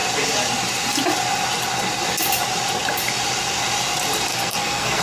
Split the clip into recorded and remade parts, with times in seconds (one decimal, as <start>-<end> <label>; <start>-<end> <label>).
0.0-4.3 recorded; 4.3-5.0 remade